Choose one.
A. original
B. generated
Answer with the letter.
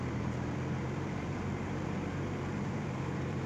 B